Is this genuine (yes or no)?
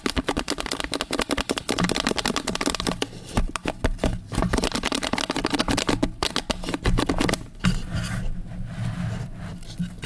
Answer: yes